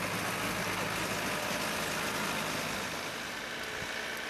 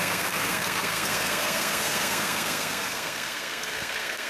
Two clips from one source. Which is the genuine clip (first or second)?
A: first